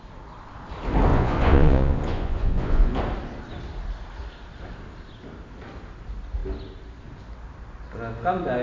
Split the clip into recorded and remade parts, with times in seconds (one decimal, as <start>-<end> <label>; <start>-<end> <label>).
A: 0.0-1.1 recorded; 1.1-3.0 remade; 3.0-8.6 recorded